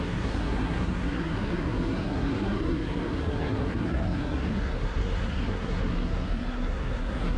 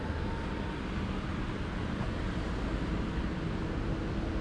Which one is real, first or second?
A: second